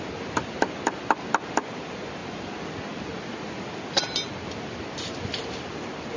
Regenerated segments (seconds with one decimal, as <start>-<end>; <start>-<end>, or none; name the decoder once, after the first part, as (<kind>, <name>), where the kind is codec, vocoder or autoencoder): none